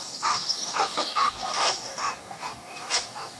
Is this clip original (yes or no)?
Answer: no